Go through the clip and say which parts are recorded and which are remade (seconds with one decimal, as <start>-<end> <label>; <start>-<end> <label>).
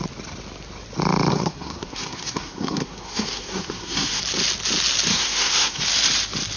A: 0.0-1.3 recorded; 1.3-4.2 remade; 4.2-5.1 recorded; 5.1-5.8 remade; 5.8-6.6 recorded